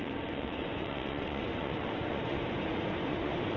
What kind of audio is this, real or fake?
fake